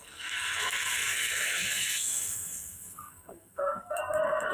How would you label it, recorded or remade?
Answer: remade